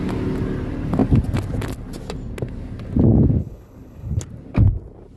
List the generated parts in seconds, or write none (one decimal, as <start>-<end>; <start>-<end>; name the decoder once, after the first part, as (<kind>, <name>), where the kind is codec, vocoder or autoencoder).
3.4-4.2 (codec, HILCodec)